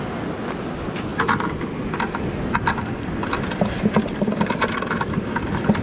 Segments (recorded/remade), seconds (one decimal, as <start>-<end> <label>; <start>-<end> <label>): 0.0-5.8 recorded